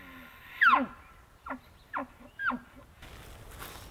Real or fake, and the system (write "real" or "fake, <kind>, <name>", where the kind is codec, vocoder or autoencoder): real